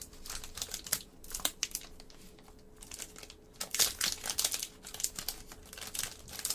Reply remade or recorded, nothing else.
recorded